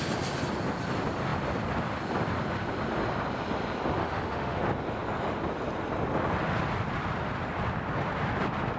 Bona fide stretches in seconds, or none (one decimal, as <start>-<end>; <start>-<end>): 0.0-4.0; 4.6-8.8